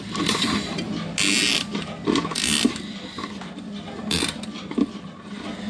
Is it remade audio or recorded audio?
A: recorded